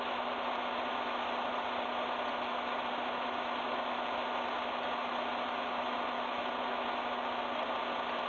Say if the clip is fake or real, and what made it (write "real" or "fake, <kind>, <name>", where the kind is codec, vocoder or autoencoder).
real